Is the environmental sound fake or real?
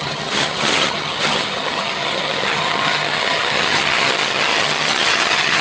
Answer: fake